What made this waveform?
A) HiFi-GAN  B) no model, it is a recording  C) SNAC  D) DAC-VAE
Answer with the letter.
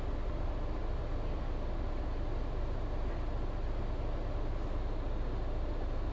B